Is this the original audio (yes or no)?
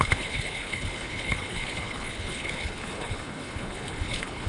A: no